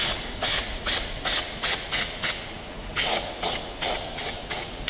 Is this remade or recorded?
remade